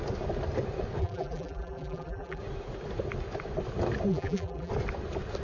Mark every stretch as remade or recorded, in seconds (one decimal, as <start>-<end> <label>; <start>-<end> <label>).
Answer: 0.0-1.0 recorded; 1.0-2.4 remade; 2.4-4.1 recorded; 4.1-4.7 remade; 4.7-5.4 recorded